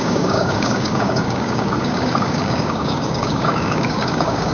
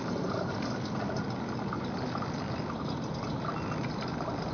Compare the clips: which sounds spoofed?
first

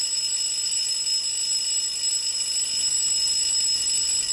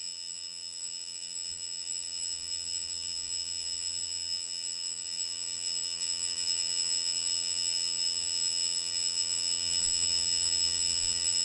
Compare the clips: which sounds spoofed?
second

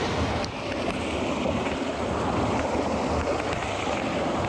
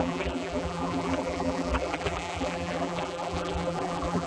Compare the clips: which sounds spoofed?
second